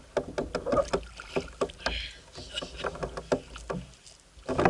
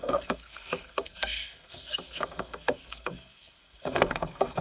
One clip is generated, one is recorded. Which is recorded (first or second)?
first